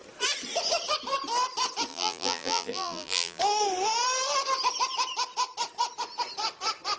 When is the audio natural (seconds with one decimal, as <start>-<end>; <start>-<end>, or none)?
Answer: 0.0-1.9; 3.4-7.0